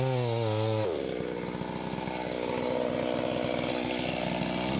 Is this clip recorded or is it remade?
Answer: recorded